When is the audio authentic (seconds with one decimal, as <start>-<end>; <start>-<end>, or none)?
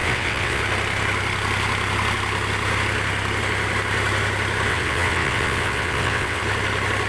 0.6-4.7; 6.4-7.1